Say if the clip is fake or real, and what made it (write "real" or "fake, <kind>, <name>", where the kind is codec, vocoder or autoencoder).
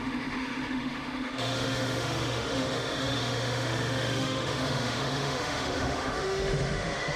fake, autoencoder, DAC-VAE